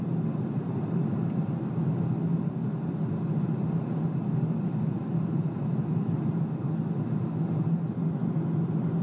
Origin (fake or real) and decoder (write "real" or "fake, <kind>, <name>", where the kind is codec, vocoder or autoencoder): real